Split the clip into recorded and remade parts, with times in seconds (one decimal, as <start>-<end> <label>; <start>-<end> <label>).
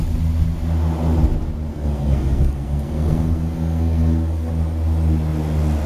0.0-1.7 recorded; 1.7-4.5 remade; 4.5-5.9 recorded